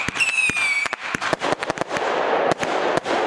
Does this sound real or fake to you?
real